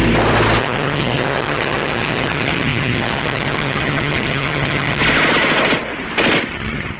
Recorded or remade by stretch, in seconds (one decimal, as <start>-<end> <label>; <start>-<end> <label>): 0.0-0.6 recorded; 0.6-5.0 remade; 5.0-6.5 recorded; 6.5-7.0 remade